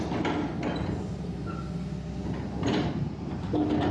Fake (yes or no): no